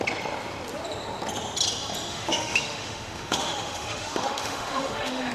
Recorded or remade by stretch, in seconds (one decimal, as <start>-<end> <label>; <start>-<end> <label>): 0.0-2.1 recorded; 2.1-5.3 remade